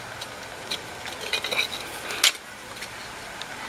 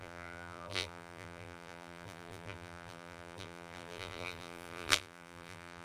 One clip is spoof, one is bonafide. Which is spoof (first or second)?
second